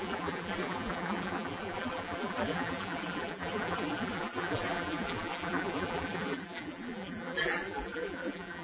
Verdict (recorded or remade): remade